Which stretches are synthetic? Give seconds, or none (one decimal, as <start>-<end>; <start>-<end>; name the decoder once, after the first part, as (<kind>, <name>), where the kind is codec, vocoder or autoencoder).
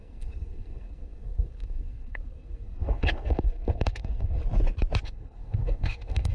0.0-4.4 (codec, SNAC); 5.0-6.3